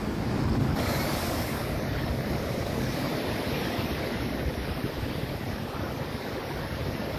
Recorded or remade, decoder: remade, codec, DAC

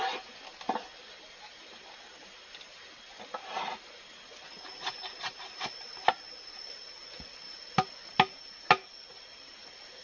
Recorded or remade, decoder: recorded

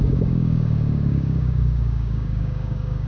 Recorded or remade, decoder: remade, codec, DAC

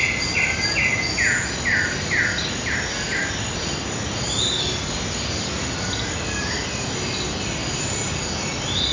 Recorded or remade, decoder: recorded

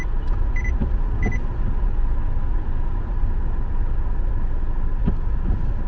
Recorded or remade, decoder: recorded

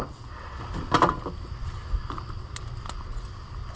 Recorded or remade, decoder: recorded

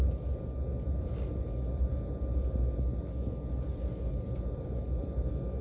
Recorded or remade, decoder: recorded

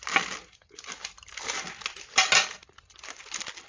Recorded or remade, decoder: recorded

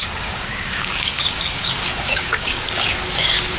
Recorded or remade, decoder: remade, codec, DAC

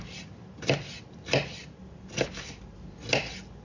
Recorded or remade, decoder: recorded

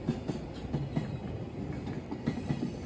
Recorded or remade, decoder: recorded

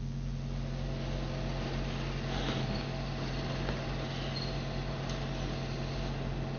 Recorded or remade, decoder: recorded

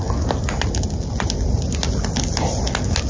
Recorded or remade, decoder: recorded